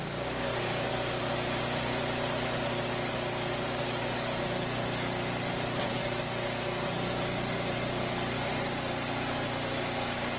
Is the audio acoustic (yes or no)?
yes